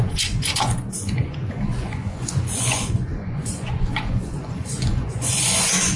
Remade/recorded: remade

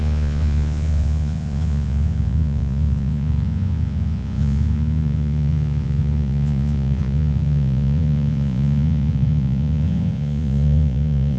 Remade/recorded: remade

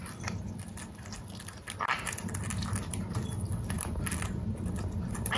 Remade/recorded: recorded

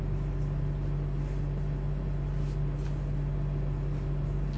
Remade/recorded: recorded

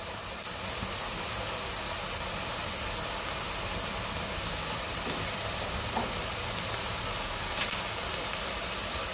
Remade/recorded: recorded